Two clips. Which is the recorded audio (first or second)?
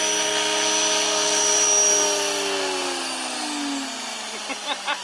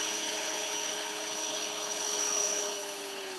first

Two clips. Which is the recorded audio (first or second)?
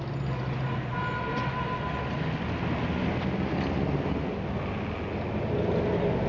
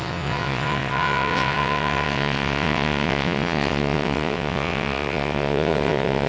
first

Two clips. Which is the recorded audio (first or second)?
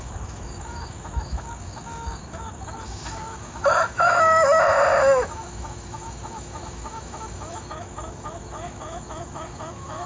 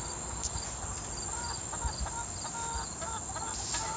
second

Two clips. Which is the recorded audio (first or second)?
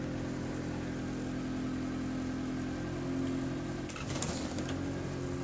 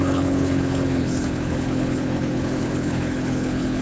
first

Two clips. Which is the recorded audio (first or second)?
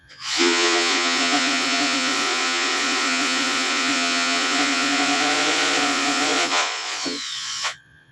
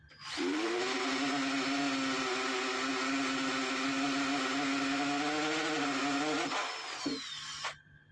second